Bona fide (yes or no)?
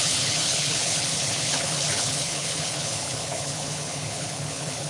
no